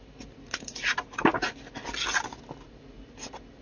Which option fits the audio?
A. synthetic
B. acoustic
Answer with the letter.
B